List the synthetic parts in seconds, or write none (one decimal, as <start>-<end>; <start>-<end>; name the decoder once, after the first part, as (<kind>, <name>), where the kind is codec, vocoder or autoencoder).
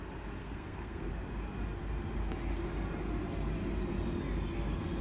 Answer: 0.4-1.1 (codec, SNAC)